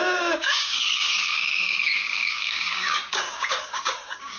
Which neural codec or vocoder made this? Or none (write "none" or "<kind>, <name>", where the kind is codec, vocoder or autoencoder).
codec, DAC